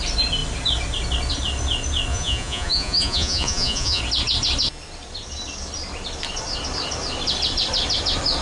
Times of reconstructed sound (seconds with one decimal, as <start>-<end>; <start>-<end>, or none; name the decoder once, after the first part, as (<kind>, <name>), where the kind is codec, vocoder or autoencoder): 2.1-4.0 (vocoder, Vocos)